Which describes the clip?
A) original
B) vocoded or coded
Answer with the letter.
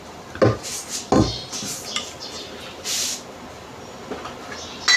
A